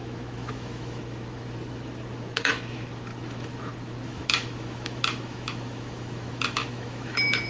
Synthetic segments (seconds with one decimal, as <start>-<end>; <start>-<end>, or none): 0.0-7.5